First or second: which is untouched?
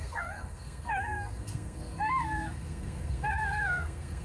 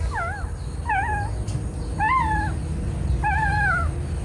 second